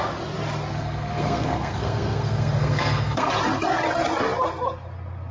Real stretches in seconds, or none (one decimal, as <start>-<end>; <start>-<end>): 0.0-0.7; 3.3-5.3